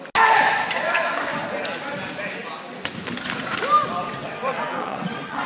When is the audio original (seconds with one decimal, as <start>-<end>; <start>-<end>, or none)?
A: 0.0-4.0